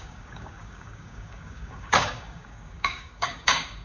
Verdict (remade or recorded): remade